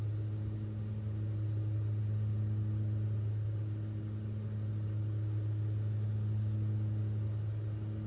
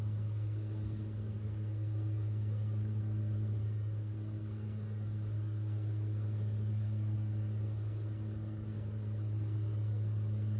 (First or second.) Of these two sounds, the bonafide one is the first